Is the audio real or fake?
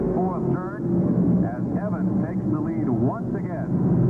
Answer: real